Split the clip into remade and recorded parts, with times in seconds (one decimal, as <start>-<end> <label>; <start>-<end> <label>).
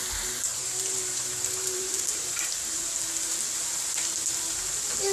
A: 0.0-0.5 recorded; 0.5-3.0 remade; 3.0-5.1 recorded